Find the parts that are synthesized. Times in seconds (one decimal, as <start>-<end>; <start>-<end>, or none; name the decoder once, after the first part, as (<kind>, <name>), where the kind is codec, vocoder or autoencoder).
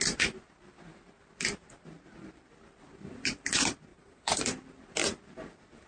3.9-4.4 (vocoder, Vocos)